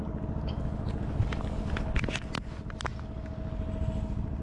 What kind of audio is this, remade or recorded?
recorded